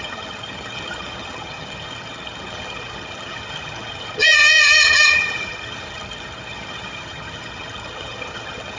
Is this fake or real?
fake